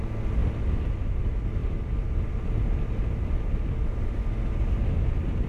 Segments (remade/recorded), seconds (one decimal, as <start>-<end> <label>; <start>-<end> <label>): 0.0-5.5 recorded